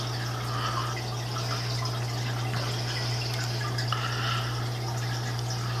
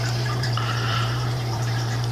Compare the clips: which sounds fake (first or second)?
second